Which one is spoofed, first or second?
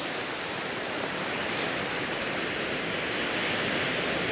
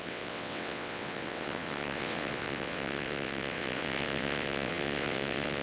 second